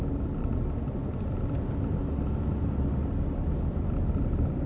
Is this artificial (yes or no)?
no